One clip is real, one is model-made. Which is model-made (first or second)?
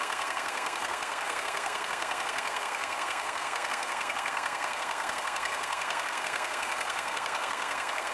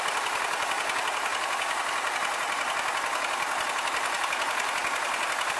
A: first